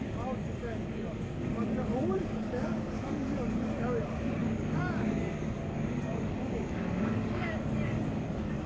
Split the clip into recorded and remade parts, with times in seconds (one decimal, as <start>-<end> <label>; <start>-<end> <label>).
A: 0.0-8.7 remade